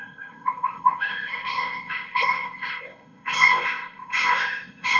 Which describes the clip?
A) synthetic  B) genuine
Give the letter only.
A